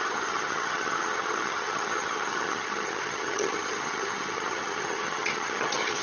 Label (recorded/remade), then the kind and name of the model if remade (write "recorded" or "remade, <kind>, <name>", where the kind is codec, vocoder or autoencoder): remade, vocoder, HiFi-GAN